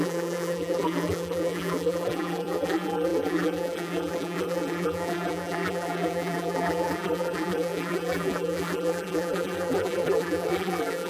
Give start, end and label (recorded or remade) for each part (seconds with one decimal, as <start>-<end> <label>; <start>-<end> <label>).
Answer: 0.0-11.1 remade